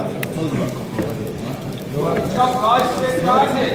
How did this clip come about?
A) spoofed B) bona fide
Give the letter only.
A